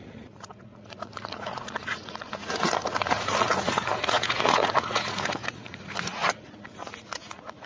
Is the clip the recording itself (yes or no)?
no